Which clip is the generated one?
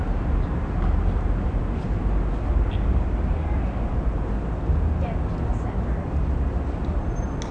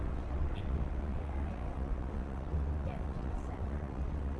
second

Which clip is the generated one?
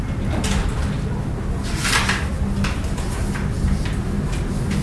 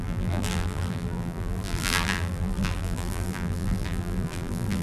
second